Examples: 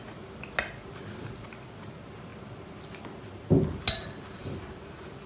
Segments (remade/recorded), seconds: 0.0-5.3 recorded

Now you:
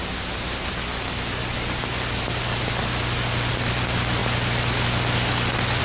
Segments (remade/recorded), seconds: 0.0-5.8 recorded

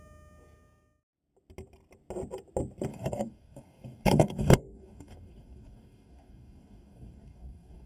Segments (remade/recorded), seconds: 0.0-2.9 recorded; 2.9-7.9 remade

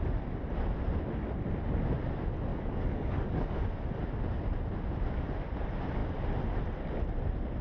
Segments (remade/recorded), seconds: 0.0-2.5 recorded; 2.5-3.7 remade; 3.7-7.6 recorded